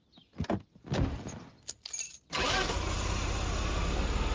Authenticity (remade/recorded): recorded